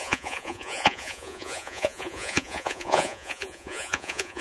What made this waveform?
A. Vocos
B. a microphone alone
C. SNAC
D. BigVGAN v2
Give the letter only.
A